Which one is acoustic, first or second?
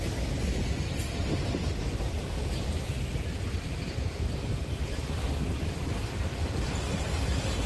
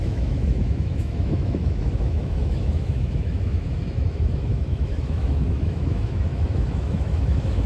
first